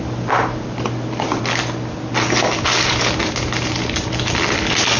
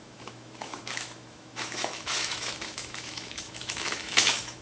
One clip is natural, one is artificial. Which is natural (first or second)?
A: first